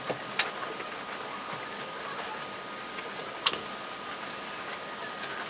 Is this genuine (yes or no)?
yes